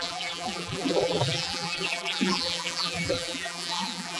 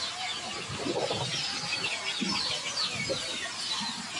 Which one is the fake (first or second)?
first